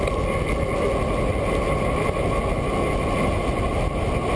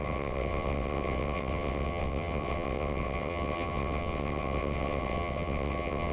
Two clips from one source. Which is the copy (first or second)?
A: second